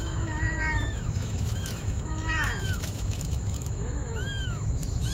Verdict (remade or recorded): remade